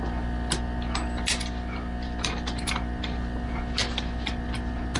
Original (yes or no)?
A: yes